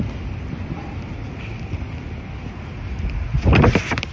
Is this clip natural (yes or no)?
yes